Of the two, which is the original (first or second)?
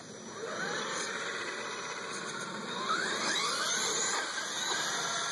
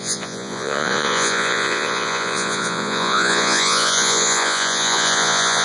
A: first